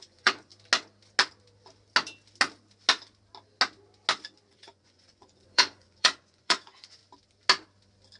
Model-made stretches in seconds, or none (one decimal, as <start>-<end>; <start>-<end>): 0.0-0.5; 4.5-7.0